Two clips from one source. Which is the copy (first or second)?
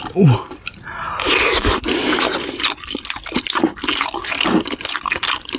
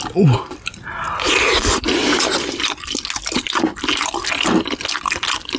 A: first